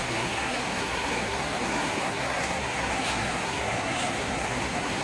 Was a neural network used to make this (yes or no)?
yes